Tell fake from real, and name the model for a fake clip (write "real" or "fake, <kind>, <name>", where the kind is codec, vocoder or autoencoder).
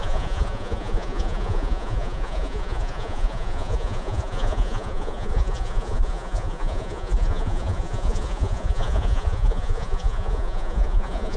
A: fake, vocoder, Vocos